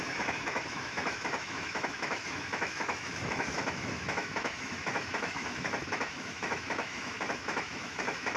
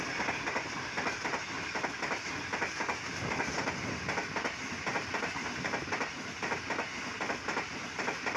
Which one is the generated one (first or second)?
first